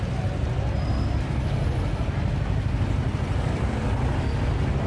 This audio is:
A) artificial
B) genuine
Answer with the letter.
B